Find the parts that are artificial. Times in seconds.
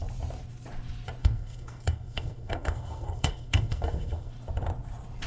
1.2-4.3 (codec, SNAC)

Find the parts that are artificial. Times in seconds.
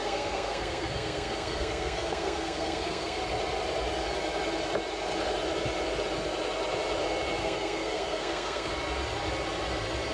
0.0-3.2 (codec, SNAC); 7.4-8.7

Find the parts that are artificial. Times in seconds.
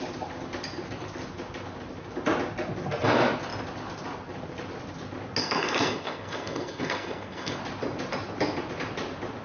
5.4-7.6 (codec, SNAC)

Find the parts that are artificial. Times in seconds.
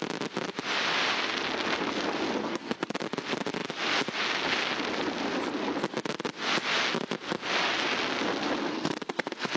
2.4-3.0 (codec, SNAC); 8.7-9.6